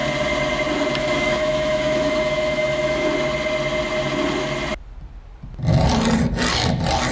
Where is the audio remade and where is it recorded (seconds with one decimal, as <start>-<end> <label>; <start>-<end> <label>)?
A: 0.0-1.0 recorded; 1.0-3.1 remade; 3.1-7.1 recorded